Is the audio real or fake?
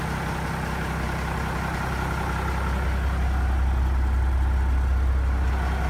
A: real